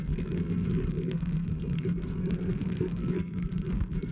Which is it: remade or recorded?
remade